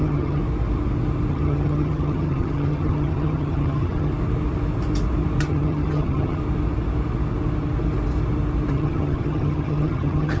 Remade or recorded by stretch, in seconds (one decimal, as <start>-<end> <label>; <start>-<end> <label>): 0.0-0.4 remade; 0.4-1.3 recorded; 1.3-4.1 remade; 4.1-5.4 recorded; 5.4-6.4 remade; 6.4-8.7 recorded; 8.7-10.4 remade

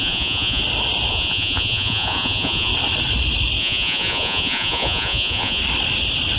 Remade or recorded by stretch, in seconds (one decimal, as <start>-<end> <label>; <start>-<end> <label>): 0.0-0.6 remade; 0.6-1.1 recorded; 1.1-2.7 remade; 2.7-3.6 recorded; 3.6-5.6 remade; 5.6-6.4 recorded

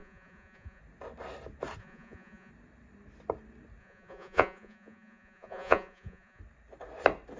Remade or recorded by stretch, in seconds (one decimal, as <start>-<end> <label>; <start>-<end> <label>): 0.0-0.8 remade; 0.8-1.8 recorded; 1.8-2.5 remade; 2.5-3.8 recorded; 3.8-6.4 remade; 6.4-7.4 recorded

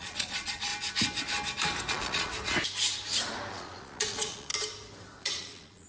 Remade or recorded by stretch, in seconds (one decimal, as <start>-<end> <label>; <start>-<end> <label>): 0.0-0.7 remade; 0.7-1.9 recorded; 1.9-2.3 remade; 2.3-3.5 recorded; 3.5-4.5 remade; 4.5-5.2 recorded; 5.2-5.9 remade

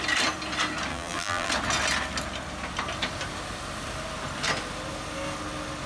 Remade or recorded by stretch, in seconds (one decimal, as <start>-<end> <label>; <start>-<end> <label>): 0.0-0.9 recorded; 0.9-1.5 remade; 1.5-5.9 recorded

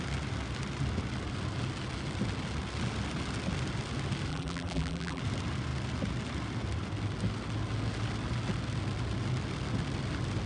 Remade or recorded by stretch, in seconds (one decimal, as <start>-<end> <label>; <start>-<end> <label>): 0.0-4.3 recorded; 4.3-5.2 remade; 5.2-10.5 recorded

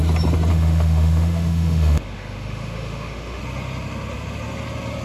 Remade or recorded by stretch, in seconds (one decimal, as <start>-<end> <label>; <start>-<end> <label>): 0.0-0.5 recorded; 0.5-3.4 remade; 3.4-5.0 recorded